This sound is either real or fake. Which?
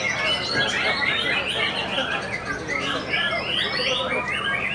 real